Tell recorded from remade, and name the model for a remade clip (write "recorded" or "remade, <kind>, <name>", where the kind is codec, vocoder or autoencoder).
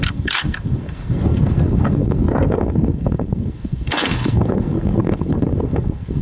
remade, codec, SNAC